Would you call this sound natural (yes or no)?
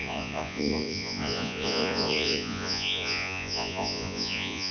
no